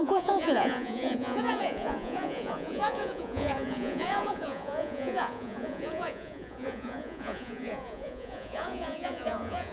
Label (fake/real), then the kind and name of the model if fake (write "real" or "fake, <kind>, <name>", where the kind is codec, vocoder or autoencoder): fake, vocoder, Vocos